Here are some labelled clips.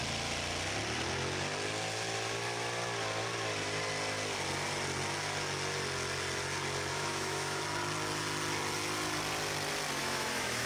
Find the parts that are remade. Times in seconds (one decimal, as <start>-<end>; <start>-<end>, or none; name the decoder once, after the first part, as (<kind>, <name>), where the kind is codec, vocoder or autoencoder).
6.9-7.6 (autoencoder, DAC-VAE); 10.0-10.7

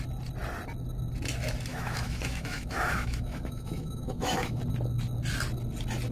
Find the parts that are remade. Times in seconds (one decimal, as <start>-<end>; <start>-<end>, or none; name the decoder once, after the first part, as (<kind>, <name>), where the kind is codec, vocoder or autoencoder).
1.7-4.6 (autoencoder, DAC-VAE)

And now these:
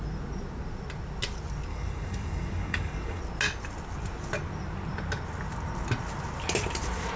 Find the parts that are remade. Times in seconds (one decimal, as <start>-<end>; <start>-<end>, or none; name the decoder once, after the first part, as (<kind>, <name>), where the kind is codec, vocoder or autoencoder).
1.7-3.2 (codec, DAC)